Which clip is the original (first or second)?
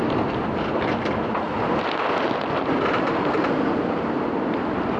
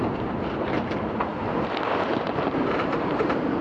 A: first